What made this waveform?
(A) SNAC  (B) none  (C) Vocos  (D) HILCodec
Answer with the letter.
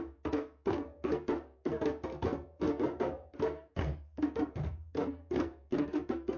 A